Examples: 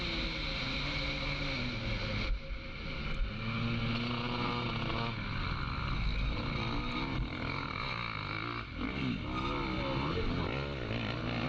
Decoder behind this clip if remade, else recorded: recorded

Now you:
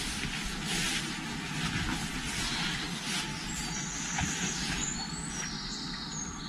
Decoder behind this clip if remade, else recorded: recorded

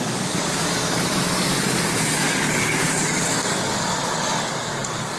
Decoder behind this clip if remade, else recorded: remade, codec, DAC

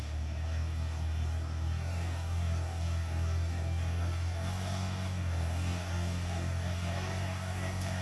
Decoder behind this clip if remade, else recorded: remade, codec, DAC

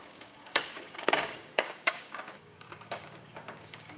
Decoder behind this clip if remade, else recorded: remade, codec, DAC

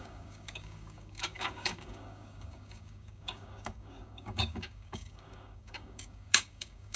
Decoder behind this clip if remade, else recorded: remade, codec, DAC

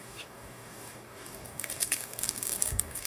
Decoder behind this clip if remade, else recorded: remade, codec, DAC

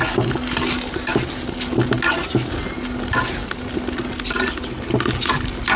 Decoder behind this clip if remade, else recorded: recorded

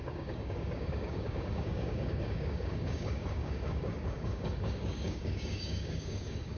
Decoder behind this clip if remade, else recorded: remade, codec, DAC